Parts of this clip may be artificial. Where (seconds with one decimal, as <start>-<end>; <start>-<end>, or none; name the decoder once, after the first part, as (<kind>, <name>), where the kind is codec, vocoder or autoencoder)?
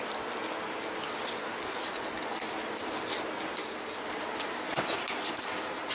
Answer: none